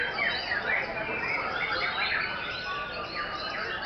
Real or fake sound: real